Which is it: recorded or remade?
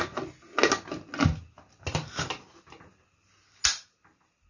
recorded